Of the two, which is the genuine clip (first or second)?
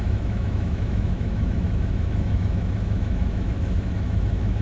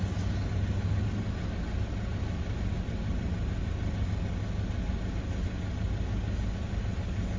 second